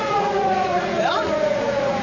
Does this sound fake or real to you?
fake